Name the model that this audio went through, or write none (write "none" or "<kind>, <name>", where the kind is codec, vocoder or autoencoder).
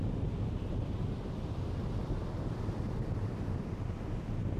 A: none